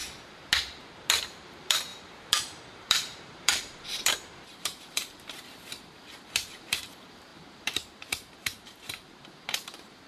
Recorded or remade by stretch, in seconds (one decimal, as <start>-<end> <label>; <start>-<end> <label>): 0.0-1.2 recorded; 1.2-10.1 remade